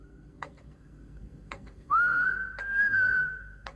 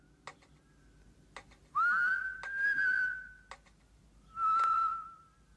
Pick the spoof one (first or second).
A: first